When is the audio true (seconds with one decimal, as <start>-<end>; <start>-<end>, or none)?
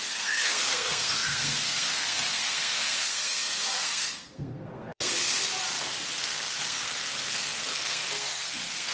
5.5-6.2